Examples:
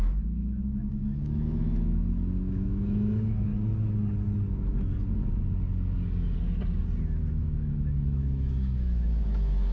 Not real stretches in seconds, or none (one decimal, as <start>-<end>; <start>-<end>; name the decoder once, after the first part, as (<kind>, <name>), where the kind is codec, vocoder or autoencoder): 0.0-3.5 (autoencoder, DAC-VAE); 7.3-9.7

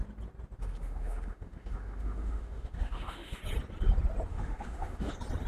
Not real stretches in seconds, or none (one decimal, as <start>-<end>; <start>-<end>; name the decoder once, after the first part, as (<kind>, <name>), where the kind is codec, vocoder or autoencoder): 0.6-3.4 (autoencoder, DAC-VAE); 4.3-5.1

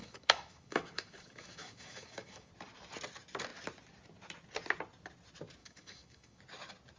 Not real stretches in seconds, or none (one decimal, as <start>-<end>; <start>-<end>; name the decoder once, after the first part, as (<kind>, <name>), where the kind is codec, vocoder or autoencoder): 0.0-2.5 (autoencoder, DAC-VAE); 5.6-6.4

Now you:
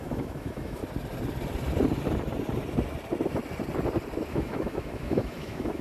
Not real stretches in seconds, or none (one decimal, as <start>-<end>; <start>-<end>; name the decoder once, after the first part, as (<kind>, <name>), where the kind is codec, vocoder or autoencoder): 0.0-0.8 (autoencoder, DAC-VAE); 4.3-5.8

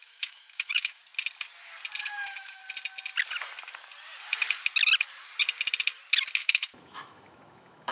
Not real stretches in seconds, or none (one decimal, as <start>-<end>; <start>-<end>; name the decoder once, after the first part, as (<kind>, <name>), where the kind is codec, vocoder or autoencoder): 0.0-1.0 (autoencoder, DAC-VAE); 2.0-2.6; 6.4-7.9